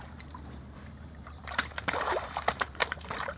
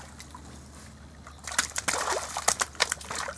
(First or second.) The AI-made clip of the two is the first